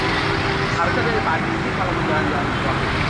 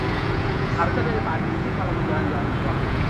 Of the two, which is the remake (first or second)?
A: second